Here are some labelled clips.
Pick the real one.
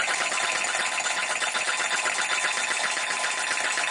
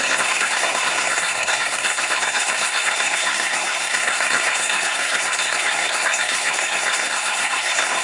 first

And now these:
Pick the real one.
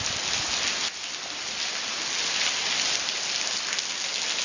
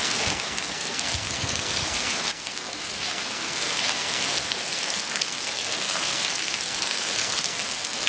first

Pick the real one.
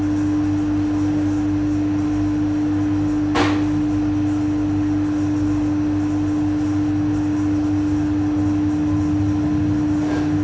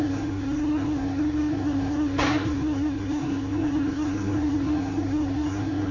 first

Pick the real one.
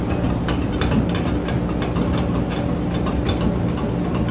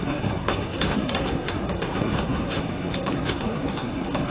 first